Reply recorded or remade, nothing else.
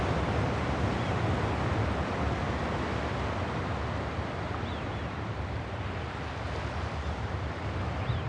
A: recorded